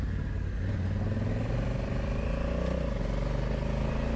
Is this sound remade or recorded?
recorded